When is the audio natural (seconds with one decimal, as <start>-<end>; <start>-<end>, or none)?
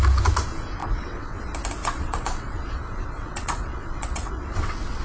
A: 0.0-0.8; 1.4-1.8